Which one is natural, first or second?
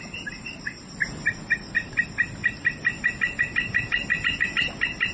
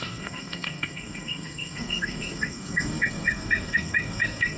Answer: first